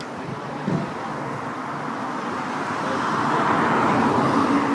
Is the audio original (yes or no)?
yes